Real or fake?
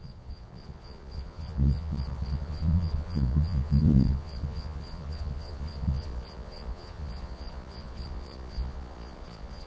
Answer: fake